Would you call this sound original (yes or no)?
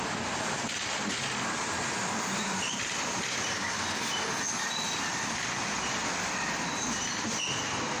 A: no